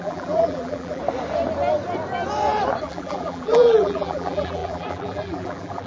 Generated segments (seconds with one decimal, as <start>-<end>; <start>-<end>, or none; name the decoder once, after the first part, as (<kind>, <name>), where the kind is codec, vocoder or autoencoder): 0.0-1.0 (vocoder, BigVGAN v2); 2.8-5.9